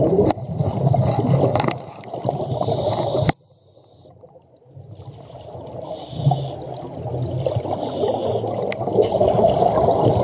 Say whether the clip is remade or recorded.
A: recorded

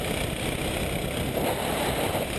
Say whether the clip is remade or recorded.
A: recorded